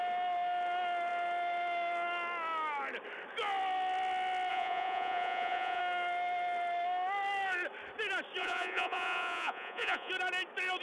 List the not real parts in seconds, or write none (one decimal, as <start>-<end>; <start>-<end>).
4.5-5.8; 8.4-10.1